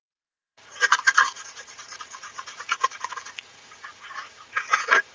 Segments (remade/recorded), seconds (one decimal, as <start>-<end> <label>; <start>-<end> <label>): 0.0-5.1 remade